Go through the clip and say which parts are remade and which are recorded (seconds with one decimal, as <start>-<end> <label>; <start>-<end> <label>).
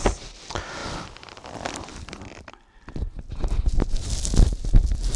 0.0-5.2 recorded